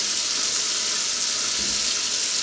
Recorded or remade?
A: recorded